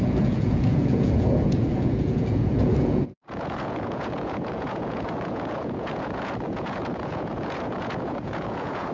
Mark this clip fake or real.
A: fake